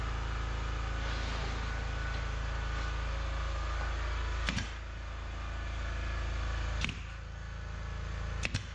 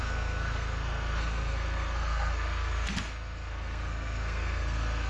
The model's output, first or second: second